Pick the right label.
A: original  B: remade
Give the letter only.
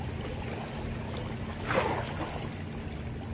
A